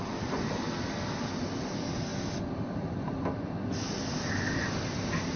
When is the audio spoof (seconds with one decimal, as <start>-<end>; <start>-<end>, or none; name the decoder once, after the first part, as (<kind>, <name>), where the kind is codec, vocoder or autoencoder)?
0.0-5.4 (vocoder, BigVGAN v2)